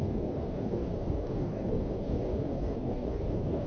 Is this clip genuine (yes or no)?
no